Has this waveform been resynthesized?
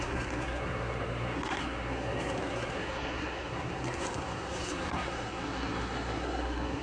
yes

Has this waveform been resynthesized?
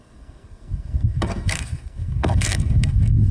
yes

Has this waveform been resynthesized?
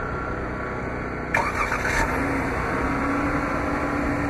no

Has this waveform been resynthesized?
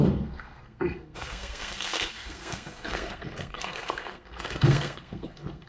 yes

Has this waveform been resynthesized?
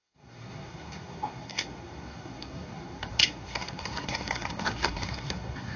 yes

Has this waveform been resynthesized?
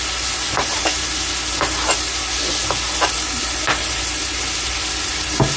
no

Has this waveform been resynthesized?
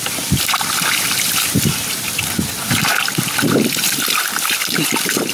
no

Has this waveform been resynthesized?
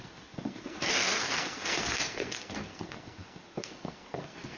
yes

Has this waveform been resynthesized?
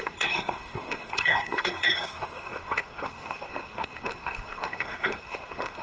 yes